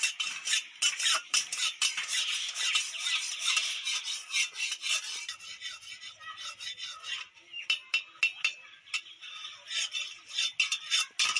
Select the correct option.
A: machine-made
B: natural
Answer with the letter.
B